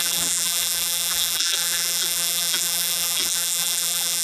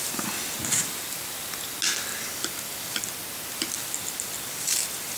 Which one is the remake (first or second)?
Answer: first